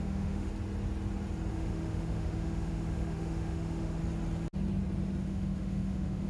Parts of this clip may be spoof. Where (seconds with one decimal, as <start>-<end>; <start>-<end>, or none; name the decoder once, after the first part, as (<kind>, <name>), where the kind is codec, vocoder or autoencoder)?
0.0-0.5 (autoencoder, DAC-VAE); 1.5-4.0; 5.2-6.3